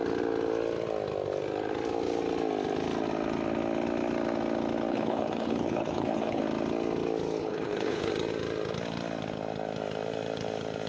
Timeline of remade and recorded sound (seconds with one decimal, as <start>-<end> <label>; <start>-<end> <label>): 0.0-4.9 recorded; 4.9-6.4 remade; 6.4-7.4 recorded; 7.4-8.1 remade; 8.1-10.9 recorded